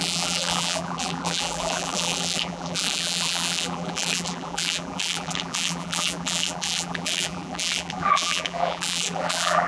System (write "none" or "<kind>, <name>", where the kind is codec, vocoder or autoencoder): vocoder, BigVGAN v2